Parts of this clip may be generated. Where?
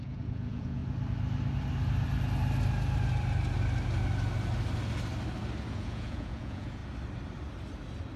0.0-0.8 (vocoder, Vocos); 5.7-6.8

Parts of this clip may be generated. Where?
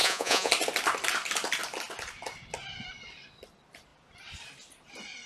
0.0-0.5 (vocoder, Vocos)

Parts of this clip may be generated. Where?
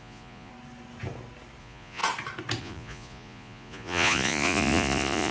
0.0-0.5 (vocoder, Vocos); 1.6-2.0; 2.6-5.3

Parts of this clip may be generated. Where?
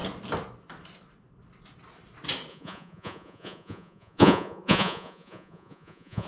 2.5-6.3 (vocoder, Vocos)